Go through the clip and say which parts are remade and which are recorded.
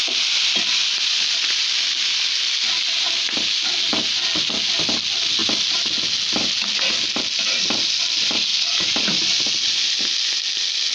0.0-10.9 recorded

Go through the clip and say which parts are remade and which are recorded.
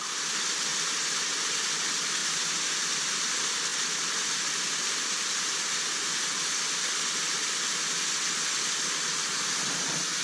0.0-10.2 recorded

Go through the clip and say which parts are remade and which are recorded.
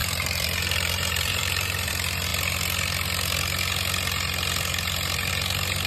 0.0-1.9 remade; 1.9-5.9 recorded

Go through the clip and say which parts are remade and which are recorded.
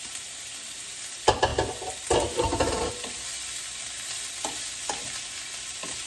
0.0-6.1 recorded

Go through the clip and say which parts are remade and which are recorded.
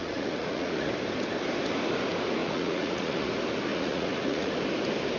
0.0-0.9 remade; 0.9-2.4 recorded; 2.4-3.3 remade; 3.3-3.7 recorded; 3.7-4.5 remade; 4.5-5.2 recorded